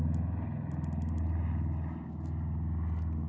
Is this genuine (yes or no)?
yes